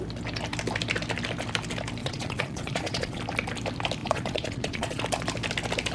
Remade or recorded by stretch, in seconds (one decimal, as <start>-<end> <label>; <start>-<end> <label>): 0.0-2.0 recorded; 2.0-3.2 remade; 3.2-4.0 recorded; 4.0-5.0 remade; 5.0-5.9 recorded